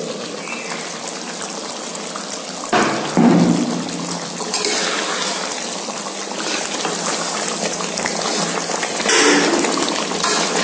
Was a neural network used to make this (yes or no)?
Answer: no